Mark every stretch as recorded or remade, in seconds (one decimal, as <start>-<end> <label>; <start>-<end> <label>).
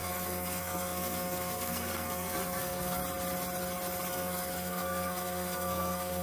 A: 0.0-3.0 remade; 3.0-4.1 recorded; 4.1-6.2 remade